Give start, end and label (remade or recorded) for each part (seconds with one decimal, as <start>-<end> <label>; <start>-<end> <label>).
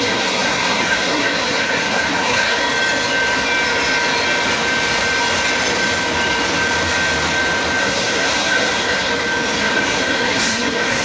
0.0-2.6 remade; 2.6-7.8 recorded; 7.8-9.1 remade; 9.1-9.6 recorded; 9.6-11.0 remade